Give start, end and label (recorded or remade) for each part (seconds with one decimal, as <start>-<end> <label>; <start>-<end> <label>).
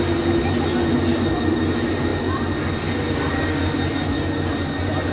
0.0-5.1 recorded